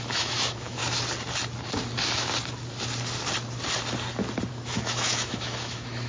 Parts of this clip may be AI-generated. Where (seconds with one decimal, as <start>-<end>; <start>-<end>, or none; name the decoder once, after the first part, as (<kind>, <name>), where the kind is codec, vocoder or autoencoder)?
0.0-0.8 (autoencoder, DAC-VAE); 4.5-6.1

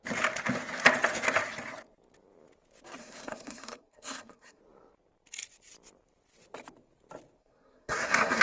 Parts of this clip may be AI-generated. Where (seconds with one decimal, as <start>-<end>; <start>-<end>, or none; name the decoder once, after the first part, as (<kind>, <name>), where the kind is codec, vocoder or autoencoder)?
3.0-4.6 (codec, SNAC); 7.4-8.4

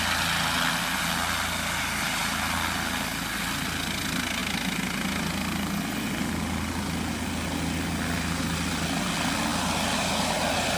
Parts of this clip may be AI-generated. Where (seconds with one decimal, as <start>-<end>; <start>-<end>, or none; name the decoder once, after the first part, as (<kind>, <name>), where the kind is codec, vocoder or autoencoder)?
none

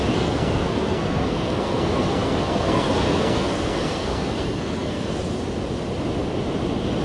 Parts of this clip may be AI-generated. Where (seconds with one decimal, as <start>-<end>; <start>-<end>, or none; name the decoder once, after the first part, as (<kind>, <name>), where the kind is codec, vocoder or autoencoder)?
0.0-5.2 (codec, SNAC)

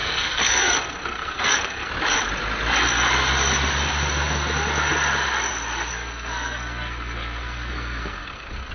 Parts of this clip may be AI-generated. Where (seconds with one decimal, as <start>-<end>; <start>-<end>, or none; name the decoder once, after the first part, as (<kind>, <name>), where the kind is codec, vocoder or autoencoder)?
0.0-1.9 (codec, SNAC); 5.9-8.7